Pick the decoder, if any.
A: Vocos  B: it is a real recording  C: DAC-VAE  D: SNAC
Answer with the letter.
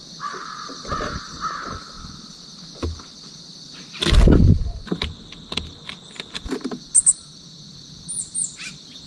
B